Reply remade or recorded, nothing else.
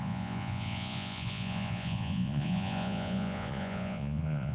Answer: remade